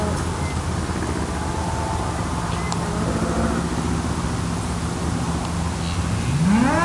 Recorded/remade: recorded